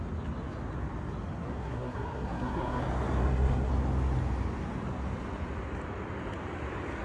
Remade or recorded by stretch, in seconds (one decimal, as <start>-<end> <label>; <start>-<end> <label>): 0.0-1.4 recorded; 1.4-2.8 remade; 2.8-3.2 recorded; 3.2-3.7 remade; 3.7-7.0 recorded